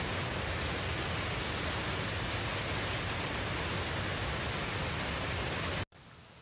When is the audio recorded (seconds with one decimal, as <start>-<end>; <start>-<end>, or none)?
0.0-2.5; 3.5-6.4

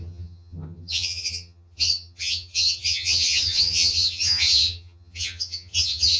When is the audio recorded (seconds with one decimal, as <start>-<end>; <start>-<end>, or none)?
none

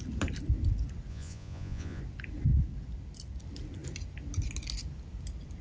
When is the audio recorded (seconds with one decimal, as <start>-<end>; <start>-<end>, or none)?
0.0-1.1; 2.0-5.6

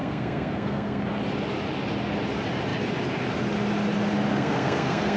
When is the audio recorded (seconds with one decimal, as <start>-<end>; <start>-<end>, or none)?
1.0-4.3

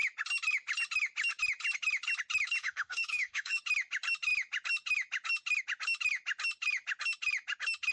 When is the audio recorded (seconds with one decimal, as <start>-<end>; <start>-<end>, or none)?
0.0-2.6; 3.6-7.9